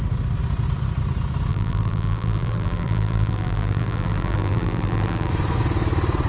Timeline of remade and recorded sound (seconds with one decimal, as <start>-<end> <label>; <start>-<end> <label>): 0.0-1.5 recorded; 1.5-5.3 remade; 5.3-6.3 recorded